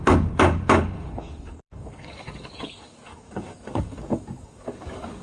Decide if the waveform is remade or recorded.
remade